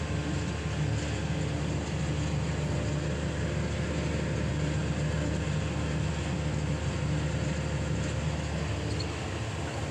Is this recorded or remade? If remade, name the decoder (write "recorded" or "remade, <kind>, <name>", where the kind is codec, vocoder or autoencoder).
recorded